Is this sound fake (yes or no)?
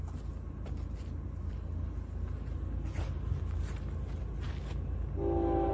no